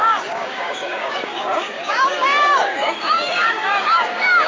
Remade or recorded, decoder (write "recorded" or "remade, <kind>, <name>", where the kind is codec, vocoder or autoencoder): remade, codec, DAC